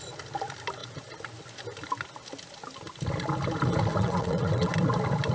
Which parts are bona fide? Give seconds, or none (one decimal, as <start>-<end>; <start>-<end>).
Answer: 0.0-3.9; 4.7-5.3